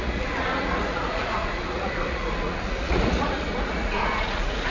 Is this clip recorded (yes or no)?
no